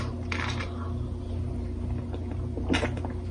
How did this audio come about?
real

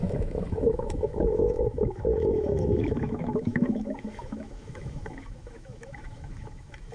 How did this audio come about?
fake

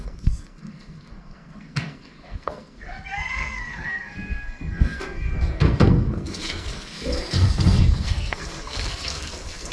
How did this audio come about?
fake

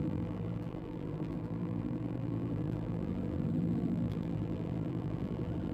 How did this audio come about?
fake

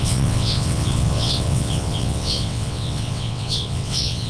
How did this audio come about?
fake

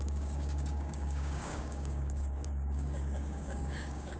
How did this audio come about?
fake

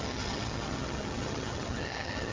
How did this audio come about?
fake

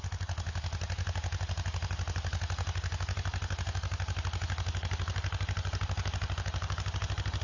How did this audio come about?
real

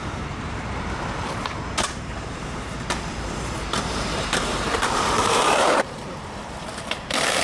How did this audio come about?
fake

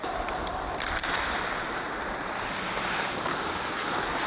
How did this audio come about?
fake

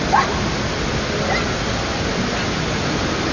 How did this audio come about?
real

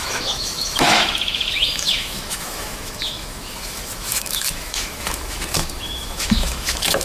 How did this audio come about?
fake